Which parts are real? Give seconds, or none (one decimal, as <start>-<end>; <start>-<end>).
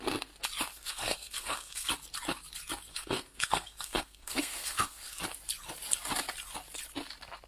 0.0-0.7; 1.9-2.9; 5.2-7.5